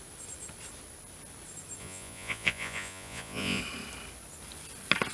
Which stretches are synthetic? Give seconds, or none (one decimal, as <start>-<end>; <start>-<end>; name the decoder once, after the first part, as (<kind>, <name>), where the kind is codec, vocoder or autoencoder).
1.8-3.6 (vocoder, Vocos)